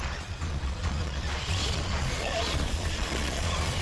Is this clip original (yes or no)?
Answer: no